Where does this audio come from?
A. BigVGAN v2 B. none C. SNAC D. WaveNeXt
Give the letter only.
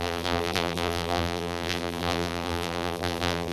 A